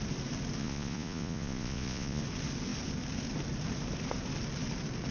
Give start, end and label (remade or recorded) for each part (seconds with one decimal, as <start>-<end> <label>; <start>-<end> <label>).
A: 0.0-0.6 recorded; 0.6-2.2 remade; 2.2-5.1 recorded